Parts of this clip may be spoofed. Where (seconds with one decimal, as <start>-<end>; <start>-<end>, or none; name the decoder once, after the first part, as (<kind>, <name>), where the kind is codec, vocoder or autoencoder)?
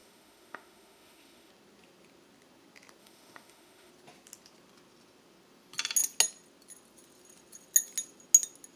0.0-1.5 (autoencoder, DAC-VAE); 3.0-3.9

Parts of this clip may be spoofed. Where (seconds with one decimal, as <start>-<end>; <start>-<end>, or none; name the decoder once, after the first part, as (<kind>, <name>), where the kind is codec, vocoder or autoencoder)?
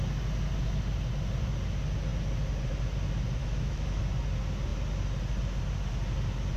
3.4-4.0 (autoencoder, DAC-VAE)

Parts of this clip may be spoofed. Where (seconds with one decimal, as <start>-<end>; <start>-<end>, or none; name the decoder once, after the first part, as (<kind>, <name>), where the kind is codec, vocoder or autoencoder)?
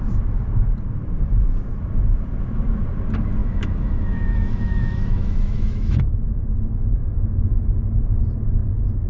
3.4-7.8 (autoencoder, DAC-VAE)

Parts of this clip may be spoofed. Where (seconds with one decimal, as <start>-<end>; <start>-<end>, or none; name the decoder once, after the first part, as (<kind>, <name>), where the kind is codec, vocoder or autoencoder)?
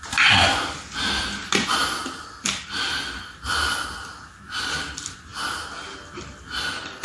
none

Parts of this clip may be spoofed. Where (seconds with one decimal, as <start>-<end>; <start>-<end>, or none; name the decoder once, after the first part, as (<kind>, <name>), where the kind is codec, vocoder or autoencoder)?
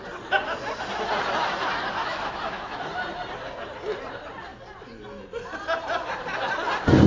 2.0-2.8 (autoencoder, DAC-VAE)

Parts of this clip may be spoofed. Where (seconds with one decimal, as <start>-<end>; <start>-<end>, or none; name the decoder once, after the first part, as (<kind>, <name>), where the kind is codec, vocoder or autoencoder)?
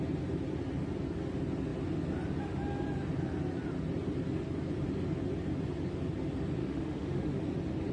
6.6-7.4 (autoencoder, DAC-VAE)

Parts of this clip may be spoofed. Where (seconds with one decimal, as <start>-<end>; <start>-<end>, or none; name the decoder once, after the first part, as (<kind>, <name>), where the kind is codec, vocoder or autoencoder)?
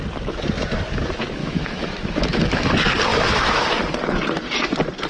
1.4-2.7 (autoencoder, DAC-VAE); 3.1-3.7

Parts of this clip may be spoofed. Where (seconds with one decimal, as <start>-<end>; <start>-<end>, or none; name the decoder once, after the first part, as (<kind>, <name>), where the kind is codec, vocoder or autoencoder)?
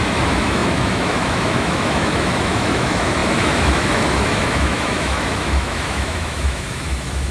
0.0-7.3 (autoencoder, DAC-VAE)